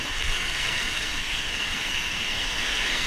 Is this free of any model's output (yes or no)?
no